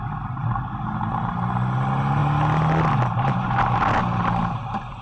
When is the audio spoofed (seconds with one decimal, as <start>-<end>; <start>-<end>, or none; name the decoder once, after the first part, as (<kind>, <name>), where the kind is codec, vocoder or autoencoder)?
none